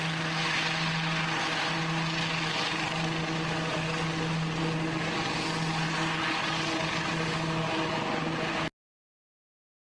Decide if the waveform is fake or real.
real